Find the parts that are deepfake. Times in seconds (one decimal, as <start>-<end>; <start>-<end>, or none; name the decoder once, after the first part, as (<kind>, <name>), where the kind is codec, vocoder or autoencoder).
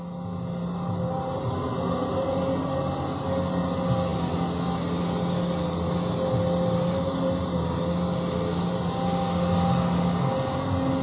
none